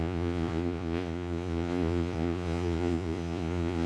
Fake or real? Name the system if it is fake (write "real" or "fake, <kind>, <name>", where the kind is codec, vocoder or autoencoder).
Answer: fake, vocoder, Vocos